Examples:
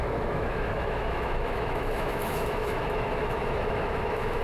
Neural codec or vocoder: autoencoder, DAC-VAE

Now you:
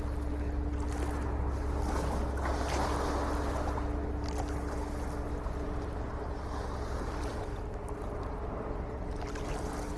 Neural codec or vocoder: none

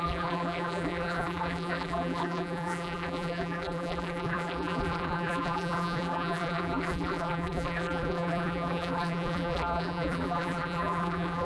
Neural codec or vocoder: vocoder, BigVGAN v2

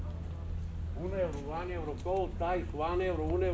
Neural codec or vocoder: none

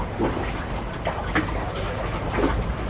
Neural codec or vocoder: none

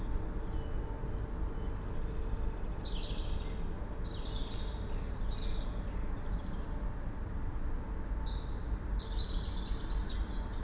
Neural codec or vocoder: none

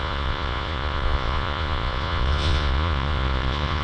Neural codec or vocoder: vocoder, Vocos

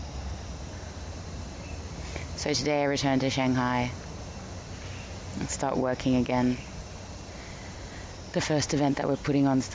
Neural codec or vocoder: none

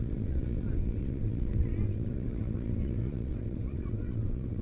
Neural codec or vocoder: vocoder, WaveNeXt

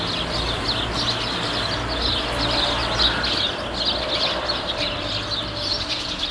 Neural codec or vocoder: none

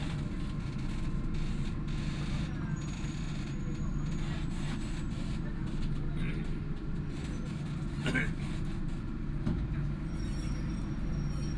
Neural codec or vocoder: none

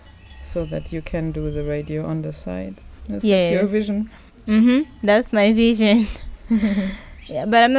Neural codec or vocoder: none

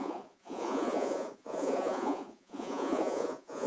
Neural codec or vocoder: vocoder, Vocos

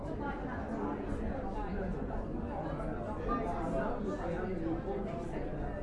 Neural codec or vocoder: none